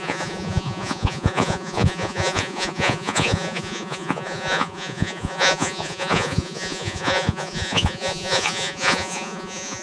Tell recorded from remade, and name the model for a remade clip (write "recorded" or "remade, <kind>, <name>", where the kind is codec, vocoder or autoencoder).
remade, vocoder, Vocos